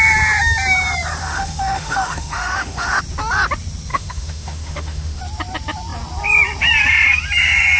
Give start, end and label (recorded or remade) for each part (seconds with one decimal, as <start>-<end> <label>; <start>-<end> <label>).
0.0-1.2 recorded; 1.2-3.0 remade; 3.0-3.9 recorded; 3.9-5.2 remade; 5.2-7.8 recorded